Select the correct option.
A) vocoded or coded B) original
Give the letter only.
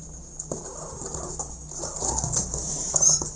B